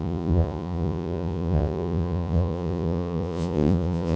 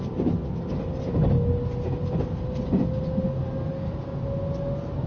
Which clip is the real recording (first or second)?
second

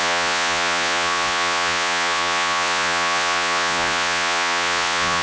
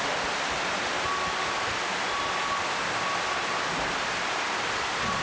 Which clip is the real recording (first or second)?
second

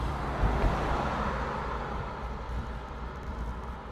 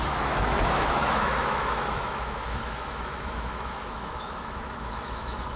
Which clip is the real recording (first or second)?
first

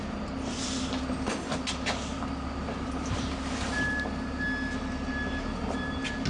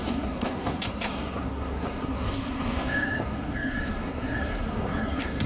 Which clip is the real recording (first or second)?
first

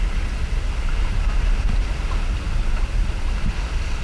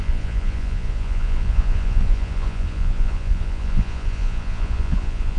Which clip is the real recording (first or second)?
first